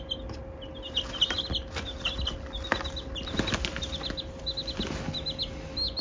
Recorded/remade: recorded